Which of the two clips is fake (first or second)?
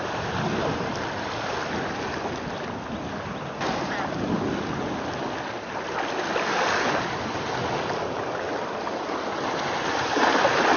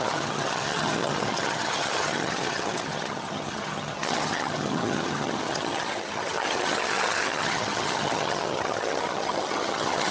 second